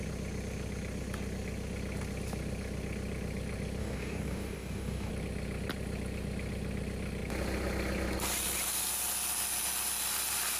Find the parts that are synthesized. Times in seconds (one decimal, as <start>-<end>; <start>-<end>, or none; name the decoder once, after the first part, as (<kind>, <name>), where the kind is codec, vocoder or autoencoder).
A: 3.8-5.1 (codec, DAC)